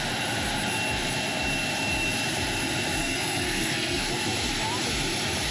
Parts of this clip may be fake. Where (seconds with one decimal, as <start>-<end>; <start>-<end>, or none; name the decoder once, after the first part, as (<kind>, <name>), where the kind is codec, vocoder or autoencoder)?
3.0-4.1 (codec, SNAC)

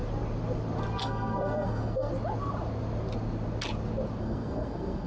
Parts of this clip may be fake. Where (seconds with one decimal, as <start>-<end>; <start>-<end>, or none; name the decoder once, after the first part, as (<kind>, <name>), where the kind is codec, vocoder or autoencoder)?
1.0-2.1 (codec, SNAC); 4.2-5.1

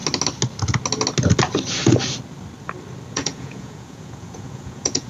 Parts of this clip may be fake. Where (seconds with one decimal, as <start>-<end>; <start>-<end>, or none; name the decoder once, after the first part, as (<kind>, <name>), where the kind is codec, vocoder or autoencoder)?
3.1-5.1 (vocoder, Vocos)

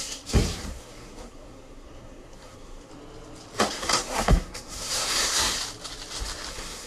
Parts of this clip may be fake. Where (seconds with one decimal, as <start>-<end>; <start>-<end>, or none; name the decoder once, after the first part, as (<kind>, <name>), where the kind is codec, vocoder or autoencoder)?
0.0-2.9 (codec, SNAC); 3.7-5.6; 6.5-6.9

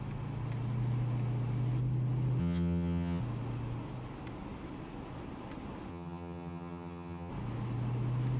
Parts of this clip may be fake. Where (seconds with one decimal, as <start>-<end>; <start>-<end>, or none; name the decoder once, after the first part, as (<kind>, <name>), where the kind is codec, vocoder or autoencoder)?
2.4-3.2 (vocoder, HiFi-GAN); 5.9-7.3

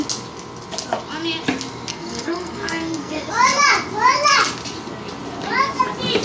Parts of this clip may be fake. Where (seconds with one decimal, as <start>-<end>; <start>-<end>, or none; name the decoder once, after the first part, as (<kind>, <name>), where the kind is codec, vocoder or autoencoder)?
1.9-3.3 (codec, SNAC)